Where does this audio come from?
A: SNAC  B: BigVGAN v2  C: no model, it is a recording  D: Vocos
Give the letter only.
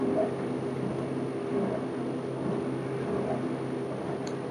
C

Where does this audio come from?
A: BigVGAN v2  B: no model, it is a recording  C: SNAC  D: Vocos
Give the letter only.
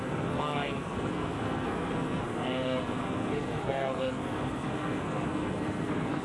C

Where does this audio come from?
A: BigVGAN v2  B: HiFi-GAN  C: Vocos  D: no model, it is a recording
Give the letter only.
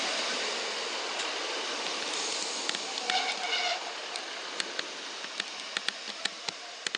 A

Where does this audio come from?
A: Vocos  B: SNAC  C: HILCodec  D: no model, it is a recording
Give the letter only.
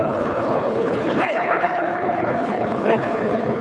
C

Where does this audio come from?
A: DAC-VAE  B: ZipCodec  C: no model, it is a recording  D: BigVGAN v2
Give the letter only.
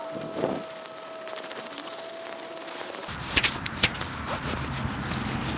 C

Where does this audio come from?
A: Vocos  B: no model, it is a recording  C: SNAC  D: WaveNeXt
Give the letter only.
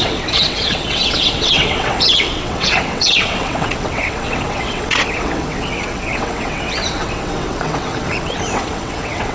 D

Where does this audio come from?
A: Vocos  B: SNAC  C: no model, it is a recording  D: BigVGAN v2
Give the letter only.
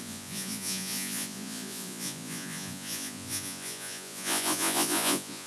A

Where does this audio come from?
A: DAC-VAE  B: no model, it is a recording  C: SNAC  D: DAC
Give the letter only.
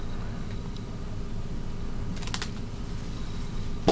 B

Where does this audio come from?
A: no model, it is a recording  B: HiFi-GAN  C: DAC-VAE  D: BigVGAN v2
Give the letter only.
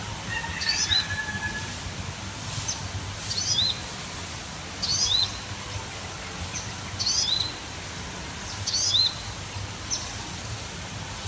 A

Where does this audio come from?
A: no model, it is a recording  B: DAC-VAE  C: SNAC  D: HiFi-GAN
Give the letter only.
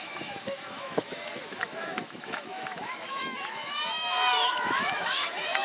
B